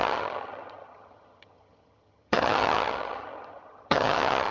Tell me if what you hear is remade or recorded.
remade